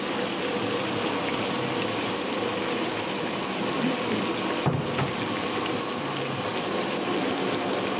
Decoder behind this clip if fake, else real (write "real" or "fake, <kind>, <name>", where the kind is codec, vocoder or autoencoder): real